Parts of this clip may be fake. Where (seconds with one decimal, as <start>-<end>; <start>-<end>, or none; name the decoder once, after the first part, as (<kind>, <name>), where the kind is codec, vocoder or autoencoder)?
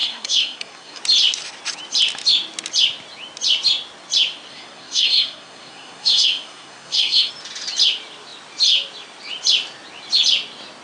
0.0-1.0 (codec, SNAC); 4.5-7.3